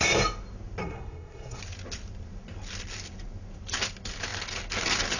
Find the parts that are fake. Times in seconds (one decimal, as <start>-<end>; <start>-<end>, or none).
0.8-1.6